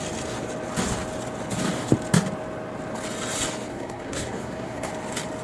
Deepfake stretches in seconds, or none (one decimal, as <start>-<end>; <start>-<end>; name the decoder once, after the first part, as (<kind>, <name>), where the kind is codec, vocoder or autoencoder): 3.7-4.9 (codec, SNAC)